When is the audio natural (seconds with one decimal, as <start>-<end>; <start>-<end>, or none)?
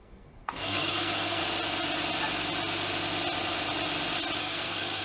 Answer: 1.4-4.4